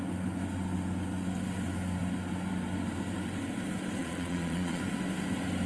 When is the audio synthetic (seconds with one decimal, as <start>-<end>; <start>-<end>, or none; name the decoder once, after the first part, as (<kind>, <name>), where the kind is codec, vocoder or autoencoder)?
4.0-4.8 (vocoder, Vocos)